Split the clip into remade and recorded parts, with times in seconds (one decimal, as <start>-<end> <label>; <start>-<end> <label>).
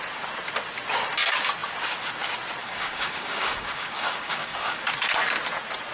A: 0.0-2.6 recorded; 2.6-4.8 remade; 4.8-5.9 recorded